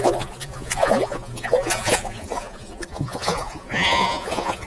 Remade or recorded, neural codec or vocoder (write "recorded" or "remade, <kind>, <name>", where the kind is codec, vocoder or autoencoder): remade, vocoder, Vocos